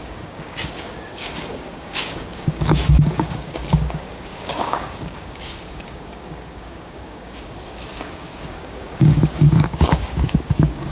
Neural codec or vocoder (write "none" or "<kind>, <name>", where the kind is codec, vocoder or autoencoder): codec, DAC